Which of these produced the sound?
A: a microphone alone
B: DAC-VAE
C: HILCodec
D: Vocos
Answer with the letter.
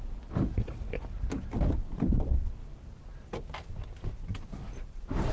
A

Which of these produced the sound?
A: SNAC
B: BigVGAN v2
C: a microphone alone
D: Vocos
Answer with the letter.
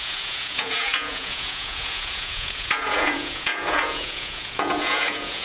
D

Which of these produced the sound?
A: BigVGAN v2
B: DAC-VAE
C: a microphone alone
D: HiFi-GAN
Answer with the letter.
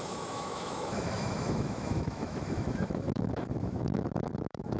B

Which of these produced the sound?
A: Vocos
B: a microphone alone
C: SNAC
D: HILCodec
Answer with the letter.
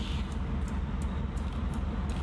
B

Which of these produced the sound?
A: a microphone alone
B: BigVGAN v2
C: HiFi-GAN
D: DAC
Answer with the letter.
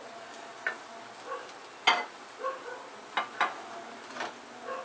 A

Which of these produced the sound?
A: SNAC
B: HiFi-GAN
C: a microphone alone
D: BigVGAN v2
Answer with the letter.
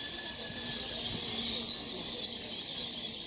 D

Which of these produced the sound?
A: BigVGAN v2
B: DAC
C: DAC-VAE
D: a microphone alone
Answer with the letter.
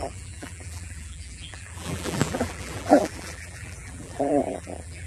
A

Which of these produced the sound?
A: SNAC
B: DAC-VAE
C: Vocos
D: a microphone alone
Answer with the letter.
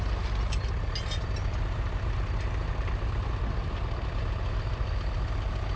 D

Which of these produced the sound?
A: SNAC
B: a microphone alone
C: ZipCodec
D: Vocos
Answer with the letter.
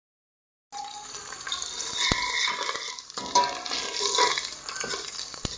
B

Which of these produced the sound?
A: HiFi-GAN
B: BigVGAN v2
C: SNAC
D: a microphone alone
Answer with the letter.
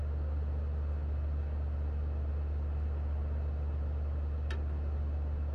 D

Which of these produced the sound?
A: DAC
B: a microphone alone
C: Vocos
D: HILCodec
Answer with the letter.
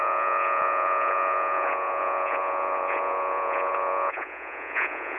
C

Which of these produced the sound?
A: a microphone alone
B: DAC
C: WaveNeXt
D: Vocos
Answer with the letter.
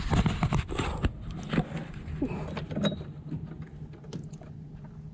A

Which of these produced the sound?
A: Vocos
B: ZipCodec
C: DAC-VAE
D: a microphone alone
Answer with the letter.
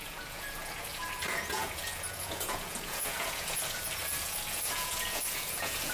A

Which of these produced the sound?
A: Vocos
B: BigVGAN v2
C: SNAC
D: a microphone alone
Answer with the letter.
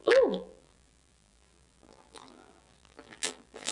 B